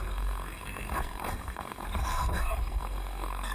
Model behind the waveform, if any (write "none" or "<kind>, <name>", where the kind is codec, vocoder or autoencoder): codec, SNAC